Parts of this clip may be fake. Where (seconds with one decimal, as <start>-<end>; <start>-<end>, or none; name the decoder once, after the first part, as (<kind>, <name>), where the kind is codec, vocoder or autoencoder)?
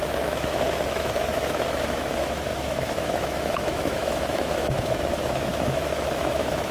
0.0-6.7 (autoencoder, DAC-VAE)